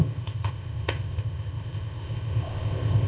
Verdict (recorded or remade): remade